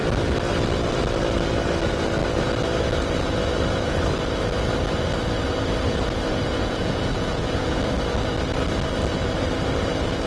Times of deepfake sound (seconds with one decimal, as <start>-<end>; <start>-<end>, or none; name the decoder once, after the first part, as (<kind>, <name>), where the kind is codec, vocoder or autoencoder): 6.3-7.8 (vocoder, Vocos)